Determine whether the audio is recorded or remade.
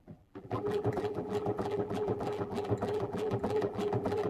remade